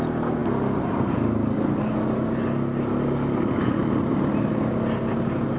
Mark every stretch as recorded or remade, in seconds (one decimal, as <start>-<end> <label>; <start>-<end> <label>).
0.0-5.6 recorded